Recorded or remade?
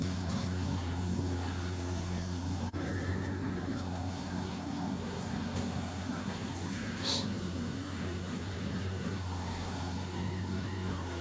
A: remade